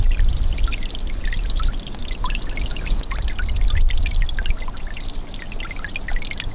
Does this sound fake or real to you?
fake